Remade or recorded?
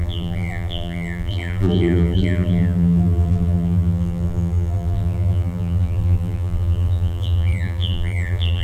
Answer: remade